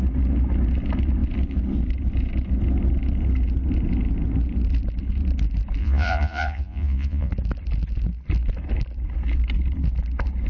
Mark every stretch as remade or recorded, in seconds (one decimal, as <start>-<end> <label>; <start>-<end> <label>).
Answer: 0.0-5.8 recorded; 5.8-7.3 remade; 7.3-10.5 recorded